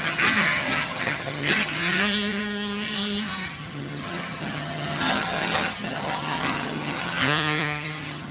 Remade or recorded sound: remade